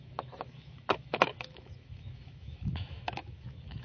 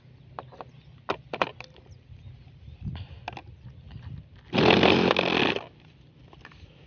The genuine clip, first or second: second